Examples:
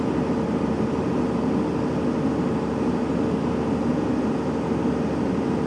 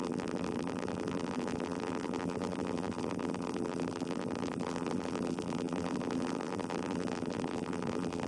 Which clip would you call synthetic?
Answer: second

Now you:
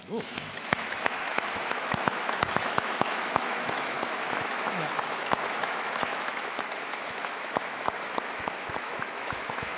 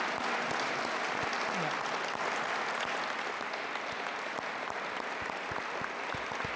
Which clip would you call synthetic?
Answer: first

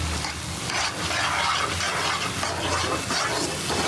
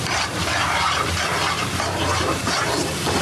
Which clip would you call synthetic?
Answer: second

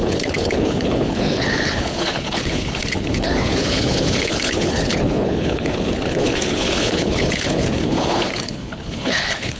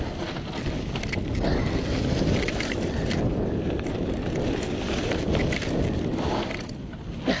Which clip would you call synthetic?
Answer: first